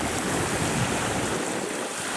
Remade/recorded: recorded